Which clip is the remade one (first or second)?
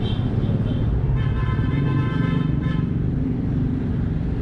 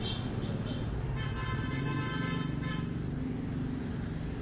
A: first